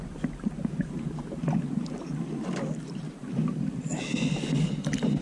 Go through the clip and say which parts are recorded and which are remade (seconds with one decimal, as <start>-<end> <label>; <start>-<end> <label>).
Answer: 0.0-3.2 recorded; 3.2-3.9 remade; 3.9-5.2 recorded